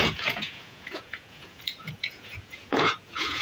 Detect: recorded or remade remade